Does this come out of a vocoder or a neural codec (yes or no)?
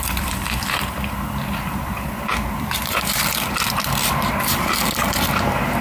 yes